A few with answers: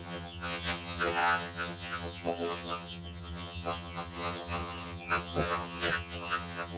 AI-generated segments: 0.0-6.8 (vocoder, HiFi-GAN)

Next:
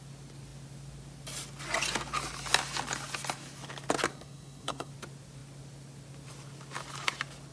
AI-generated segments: 4.1-4.9 (codec, SNAC)

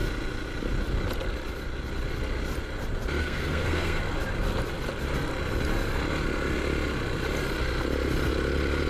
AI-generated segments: 3.2-4.0 (codec, SNAC)

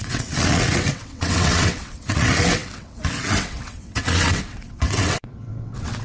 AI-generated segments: 0.0-6.0 (vocoder, WaveNeXt)

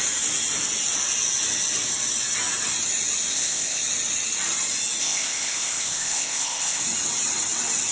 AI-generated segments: 3.3-3.8 (codec, ZipCodec); 5.0-6.8

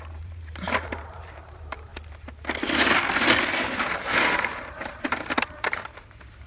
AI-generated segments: 0.0-1.9 (vocoder, BigVGAN v2); 3.7-6.5